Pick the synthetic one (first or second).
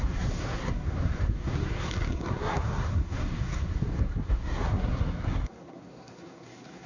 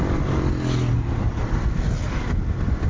first